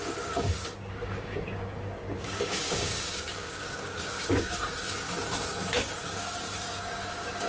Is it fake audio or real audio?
fake